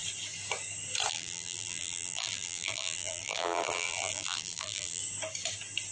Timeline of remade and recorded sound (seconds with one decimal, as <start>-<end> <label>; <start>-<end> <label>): 0.0-1.1 recorded; 1.1-5.0 remade; 5.0-5.9 recorded